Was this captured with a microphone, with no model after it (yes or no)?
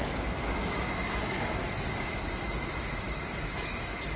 no